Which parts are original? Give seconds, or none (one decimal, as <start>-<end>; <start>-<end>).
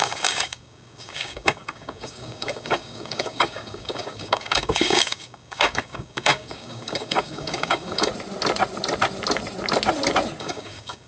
8.1-10.4